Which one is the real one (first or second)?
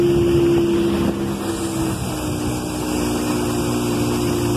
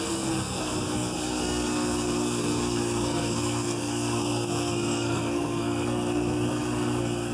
first